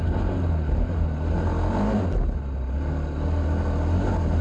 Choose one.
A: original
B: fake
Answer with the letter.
A